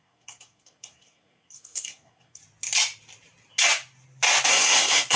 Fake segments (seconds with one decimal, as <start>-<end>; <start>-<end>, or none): 0.0-2.4; 4.5-5.2